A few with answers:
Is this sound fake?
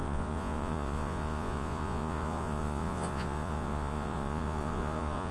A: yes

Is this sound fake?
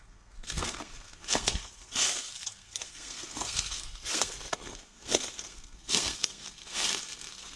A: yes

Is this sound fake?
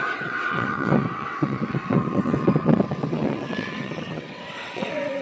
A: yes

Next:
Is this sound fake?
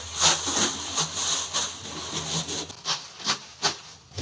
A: no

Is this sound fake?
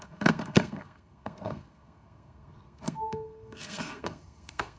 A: yes